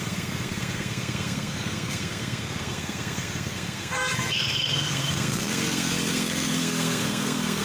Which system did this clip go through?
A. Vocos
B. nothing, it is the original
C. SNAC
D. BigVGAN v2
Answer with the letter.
C